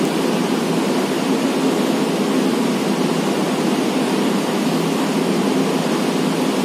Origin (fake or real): real